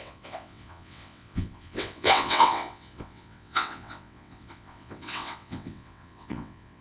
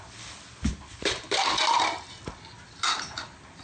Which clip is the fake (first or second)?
first